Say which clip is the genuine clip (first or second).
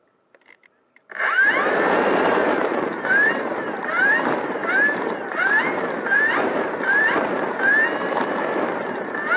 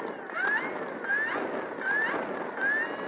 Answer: second